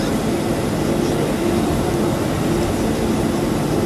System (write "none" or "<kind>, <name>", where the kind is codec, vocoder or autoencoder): none